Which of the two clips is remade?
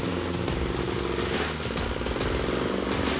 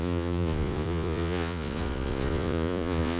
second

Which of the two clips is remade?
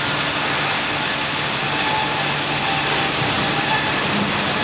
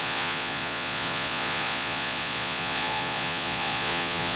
second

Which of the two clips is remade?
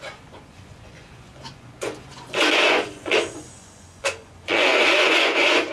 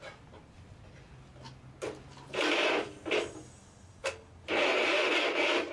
first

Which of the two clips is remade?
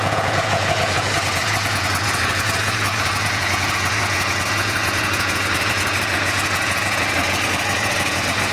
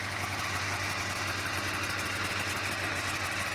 first